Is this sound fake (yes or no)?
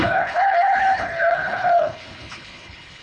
yes